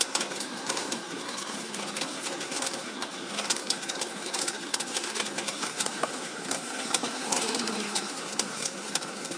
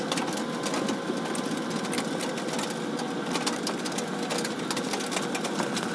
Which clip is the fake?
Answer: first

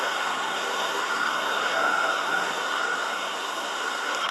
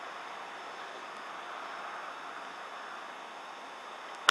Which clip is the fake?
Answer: first